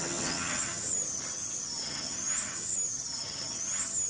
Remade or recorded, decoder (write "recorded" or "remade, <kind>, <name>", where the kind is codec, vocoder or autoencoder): remade, vocoder, HiFi-GAN